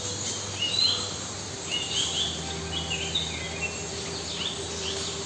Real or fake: real